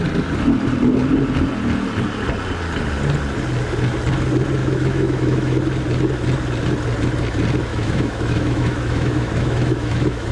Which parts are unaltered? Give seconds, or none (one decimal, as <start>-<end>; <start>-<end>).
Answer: 0.0-4.6; 5.6-7.7